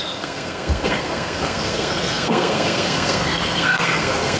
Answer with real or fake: fake